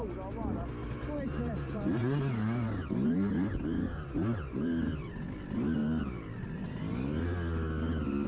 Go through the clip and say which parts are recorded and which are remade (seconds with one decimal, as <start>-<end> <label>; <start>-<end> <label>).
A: 0.0-0.8 recorded; 0.8-4.9 remade; 4.9-5.8 recorded; 5.8-6.8 remade; 6.8-8.3 recorded